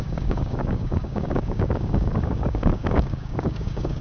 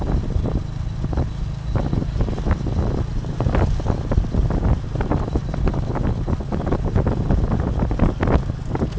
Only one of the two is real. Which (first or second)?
second